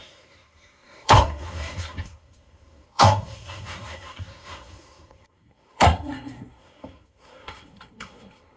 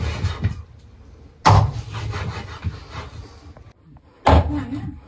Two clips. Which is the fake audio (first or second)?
first